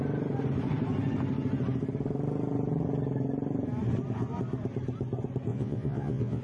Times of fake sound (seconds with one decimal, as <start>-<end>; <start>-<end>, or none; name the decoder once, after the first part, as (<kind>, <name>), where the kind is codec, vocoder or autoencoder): 5.5-6.4 (vocoder, Vocos)

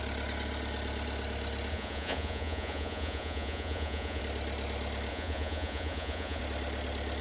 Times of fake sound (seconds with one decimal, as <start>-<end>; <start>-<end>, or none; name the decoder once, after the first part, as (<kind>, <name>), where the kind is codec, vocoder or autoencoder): 1.7-4.2 (vocoder, Vocos); 5.1-6.4

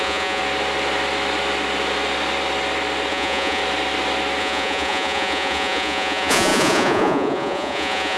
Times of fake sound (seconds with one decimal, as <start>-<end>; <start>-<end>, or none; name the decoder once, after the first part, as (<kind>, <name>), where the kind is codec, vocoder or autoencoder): 0.0-0.4 (vocoder, Vocos); 3.1-3.6; 4.4-8.2

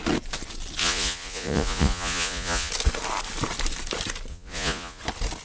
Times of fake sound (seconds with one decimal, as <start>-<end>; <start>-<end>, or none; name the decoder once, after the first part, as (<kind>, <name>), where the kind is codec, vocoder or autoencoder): 0.8-2.7 (vocoder, Vocos); 4.3-5.0

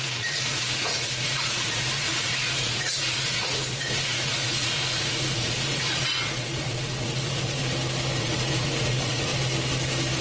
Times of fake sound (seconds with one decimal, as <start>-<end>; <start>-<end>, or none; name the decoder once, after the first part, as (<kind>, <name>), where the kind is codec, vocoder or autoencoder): 0.0-7.6 (vocoder, Vocos); 8.2-9.3

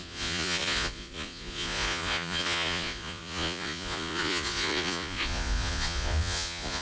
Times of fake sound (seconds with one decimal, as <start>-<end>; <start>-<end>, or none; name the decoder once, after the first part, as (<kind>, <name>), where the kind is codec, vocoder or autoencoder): 0.0-6.8 (vocoder, Vocos)

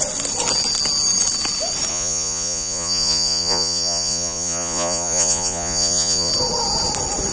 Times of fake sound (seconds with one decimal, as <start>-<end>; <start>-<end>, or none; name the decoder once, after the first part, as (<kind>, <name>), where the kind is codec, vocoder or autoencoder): 1.9-6.3 (vocoder, Vocos)

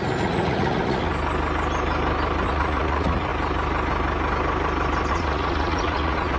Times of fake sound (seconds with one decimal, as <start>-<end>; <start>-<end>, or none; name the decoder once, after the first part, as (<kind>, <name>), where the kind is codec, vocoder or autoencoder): 0.0-1.1 (vocoder, Vocos); 2.5-3.3; 5.1-6.4